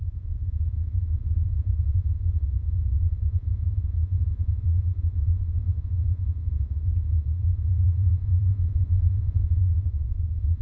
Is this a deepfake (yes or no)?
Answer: yes